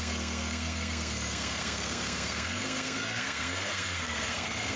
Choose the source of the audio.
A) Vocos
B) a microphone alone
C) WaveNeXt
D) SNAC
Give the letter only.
D